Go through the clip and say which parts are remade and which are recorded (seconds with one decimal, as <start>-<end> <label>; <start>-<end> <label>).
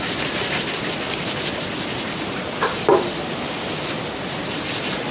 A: 0.0-5.1 remade